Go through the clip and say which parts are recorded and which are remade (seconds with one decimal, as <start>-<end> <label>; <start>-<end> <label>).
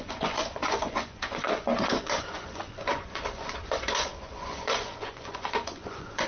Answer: 0.0-6.3 remade